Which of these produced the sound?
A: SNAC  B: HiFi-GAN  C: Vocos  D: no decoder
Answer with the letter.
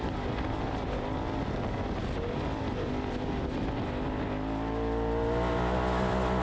D